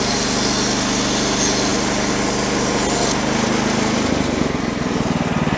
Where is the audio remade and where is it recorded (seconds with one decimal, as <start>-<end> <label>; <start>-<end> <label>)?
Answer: 0.0-5.6 recorded